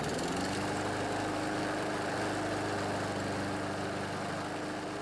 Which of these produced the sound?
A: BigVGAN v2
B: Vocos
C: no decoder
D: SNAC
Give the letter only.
C